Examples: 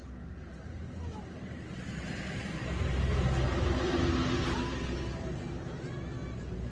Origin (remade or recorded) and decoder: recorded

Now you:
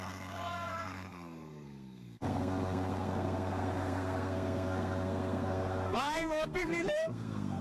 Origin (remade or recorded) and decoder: remade, codec, SNAC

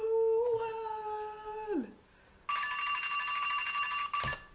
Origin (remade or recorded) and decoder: recorded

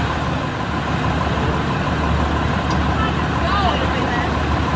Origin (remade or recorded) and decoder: recorded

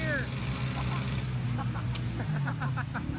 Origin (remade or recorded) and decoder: recorded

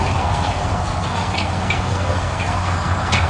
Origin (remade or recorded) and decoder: remade, codec, SNAC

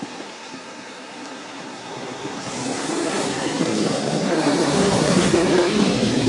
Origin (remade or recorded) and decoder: remade, codec, SNAC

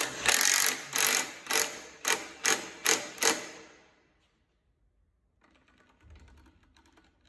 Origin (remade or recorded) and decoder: recorded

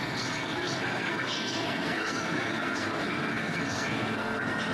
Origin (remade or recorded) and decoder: remade, codec, SNAC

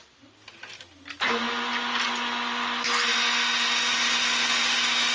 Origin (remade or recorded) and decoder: recorded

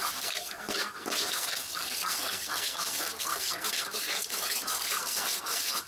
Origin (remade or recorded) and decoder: remade, codec, SNAC